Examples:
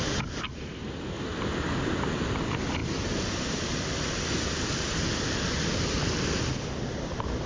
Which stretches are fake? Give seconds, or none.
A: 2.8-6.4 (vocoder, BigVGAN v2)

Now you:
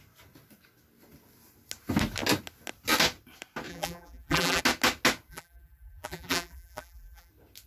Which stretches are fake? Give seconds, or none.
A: 3.7-4.6 (vocoder, BigVGAN v2); 5.3-7.3

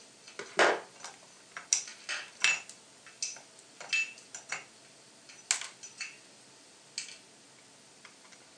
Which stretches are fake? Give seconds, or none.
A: none

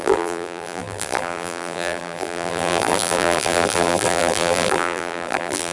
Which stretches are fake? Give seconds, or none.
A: 0.0-5.7 (vocoder, BigVGAN v2)

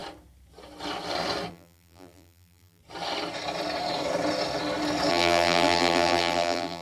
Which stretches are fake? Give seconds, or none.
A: 1.5-2.8 (vocoder, BigVGAN v2); 5.1-6.8

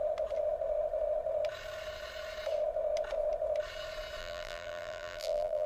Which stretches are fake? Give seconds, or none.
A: 4.2-5.7 (vocoder, BigVGAN v2)

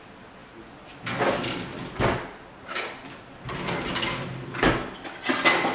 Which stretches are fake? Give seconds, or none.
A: none